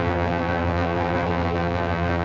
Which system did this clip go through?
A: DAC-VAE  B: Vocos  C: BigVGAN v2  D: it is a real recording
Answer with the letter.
C